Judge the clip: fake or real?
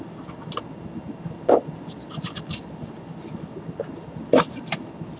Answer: real